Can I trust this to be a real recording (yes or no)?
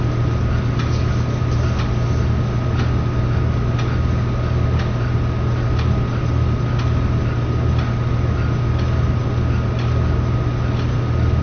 yes